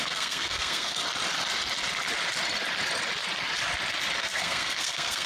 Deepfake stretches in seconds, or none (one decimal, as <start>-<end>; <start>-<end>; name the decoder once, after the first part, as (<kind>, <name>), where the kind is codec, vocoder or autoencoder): 0.0-1.0 (codec, SNAC); 4.2-5.3